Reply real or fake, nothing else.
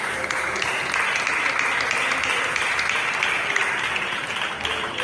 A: real